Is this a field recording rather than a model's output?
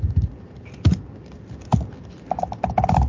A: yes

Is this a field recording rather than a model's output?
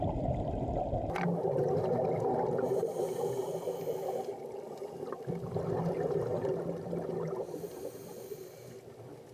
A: yes